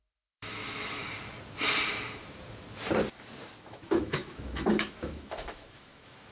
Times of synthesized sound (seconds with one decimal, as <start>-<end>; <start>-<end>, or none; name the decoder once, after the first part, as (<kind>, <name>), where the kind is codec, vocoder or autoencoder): 0.0-1.0 (autoencoder, DAC-VAE); 3.6-6.3